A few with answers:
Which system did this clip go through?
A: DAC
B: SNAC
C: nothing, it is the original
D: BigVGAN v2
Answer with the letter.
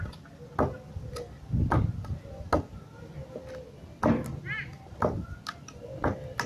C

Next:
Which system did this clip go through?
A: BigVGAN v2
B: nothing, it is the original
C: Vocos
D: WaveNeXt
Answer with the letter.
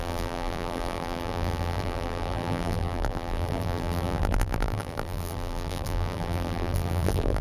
A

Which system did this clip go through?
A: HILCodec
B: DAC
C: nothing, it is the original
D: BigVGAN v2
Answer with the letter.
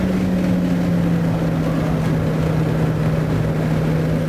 C